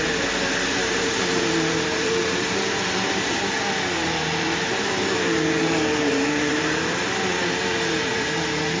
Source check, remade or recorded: remade